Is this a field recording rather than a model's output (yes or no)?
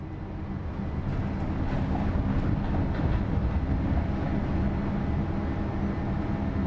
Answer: yes